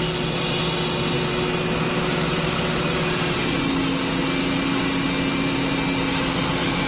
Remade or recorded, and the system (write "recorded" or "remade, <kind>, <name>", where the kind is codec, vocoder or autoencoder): recorded